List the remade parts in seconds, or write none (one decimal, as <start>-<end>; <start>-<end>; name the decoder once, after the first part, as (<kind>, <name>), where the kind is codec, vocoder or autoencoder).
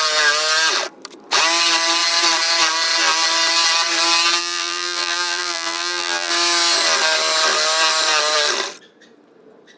4.4-6.3 (vocoder, BigVGAN v2)